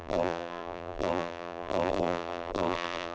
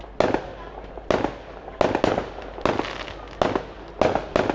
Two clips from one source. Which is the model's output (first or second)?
first